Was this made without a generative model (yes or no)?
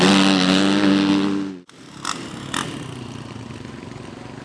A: yes